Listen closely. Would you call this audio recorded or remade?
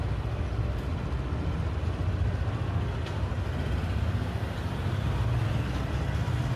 recorded